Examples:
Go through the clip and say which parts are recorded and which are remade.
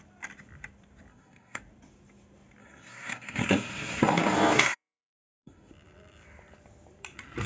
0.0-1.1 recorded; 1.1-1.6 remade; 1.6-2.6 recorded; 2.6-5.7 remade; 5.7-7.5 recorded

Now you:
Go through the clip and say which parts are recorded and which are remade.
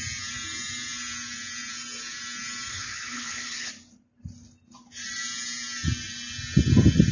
0.0-2.7 recorded; 2.7-3.7 remade; 3.7-7.1 recorded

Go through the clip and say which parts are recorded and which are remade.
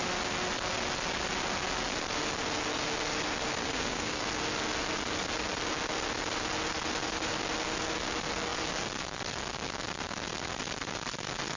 0.0-3.6 recorded; 3.6-4.2 remade; 4.2-11.6 recorded